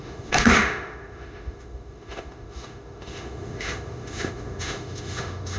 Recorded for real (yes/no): no